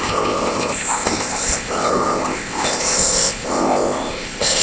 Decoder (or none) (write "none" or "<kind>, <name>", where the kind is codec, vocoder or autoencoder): codec, ZipCodec